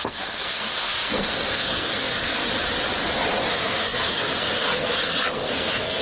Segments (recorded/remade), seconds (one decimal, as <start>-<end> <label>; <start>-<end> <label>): 0.0-2.4 remade; 2.4-3.5 recorded; 3.5-6.0 remade